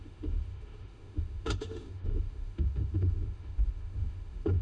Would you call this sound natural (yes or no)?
no